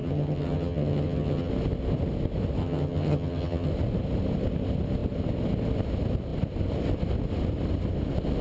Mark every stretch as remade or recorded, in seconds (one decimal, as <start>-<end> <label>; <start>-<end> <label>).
0.0-1.5 remade; 1.5-2.6 recorded; 2.6-3.7 remade; 3.7-8.4 recorded